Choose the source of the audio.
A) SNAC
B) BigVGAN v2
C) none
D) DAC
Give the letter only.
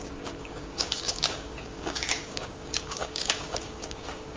D